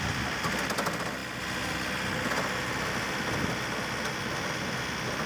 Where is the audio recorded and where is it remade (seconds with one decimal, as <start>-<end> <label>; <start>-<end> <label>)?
0.0-5.3 recorded